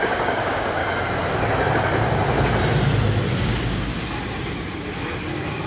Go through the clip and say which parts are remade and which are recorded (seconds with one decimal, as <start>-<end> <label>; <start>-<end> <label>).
0.0-0.8 remade; 0.8-3.4 recorded; 3.4-3.9 remade; 3.9-5.7 recorded